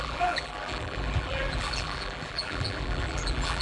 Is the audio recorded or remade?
remade